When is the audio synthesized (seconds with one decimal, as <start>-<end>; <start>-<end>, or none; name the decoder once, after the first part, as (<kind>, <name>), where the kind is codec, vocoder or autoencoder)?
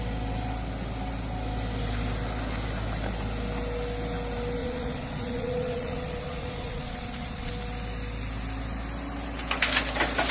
4.6-7.5 (vocoder, Vocos)